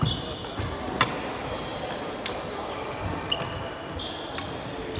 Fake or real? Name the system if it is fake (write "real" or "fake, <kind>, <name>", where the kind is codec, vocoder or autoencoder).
real